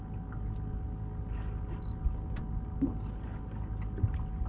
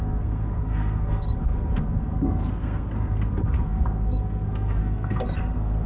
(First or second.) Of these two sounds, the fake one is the second